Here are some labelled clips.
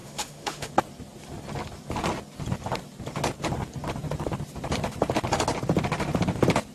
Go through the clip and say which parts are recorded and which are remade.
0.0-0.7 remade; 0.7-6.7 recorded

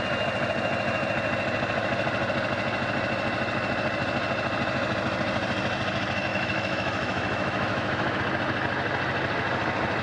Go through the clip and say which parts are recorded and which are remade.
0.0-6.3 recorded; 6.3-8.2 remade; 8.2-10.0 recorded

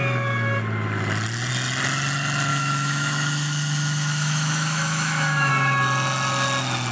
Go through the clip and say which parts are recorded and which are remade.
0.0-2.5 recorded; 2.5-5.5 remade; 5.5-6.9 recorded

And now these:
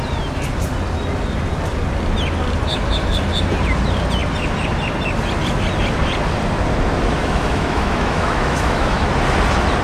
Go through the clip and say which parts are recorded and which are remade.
0.0-7.2 recorded; 7.2-9.1 remade; 9.1-9.8 recorded